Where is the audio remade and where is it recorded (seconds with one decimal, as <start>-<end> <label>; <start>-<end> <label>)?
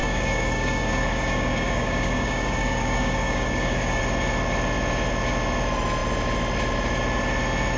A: 0.0-4.0 remade; 4.0-7.8 recorded